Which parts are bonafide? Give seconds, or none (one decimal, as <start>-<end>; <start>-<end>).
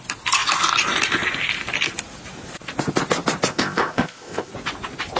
0.0-3.5; 4.5-5.2